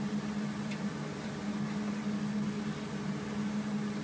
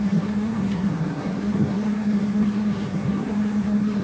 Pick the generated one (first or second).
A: second